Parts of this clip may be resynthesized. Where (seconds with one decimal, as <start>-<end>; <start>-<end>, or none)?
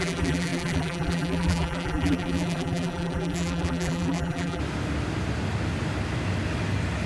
0.0-4.6